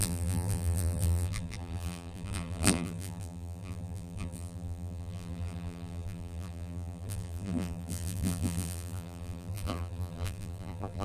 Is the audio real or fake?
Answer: fake